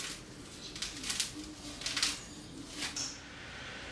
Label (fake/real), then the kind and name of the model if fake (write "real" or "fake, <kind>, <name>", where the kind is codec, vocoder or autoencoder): real